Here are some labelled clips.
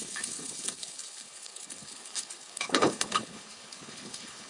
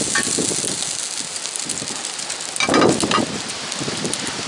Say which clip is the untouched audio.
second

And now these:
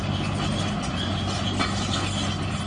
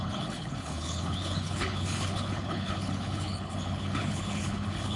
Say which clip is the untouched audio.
first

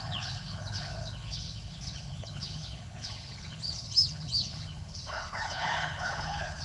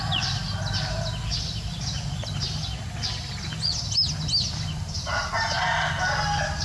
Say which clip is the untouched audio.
second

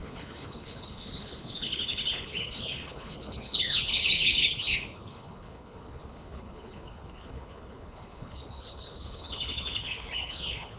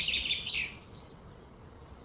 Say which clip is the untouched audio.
second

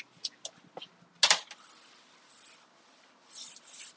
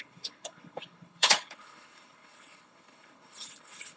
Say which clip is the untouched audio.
first